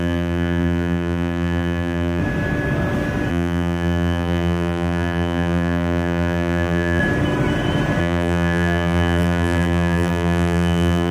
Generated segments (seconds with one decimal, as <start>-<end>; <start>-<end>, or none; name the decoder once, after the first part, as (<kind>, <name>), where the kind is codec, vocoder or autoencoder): 0.0-2.2 (vocoder, BigVGAN v2); 3.3-7.0; 8.0-11.1